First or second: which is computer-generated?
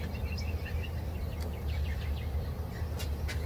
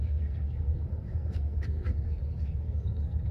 second